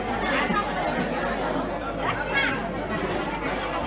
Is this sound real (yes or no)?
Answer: yes